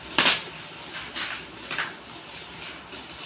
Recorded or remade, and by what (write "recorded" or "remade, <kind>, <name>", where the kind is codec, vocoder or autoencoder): recorded